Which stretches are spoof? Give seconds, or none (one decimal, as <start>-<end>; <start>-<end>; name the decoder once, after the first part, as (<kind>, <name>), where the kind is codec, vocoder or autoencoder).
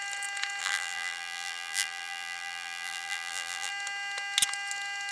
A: 0.6-3.7 (vocoder, BigVGAN v2)